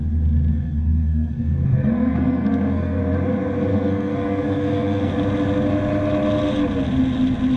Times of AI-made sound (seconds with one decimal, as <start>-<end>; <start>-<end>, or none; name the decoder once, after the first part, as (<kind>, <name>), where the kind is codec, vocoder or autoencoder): 0.5-3.0 (codec, SNAC); 3.7-5.1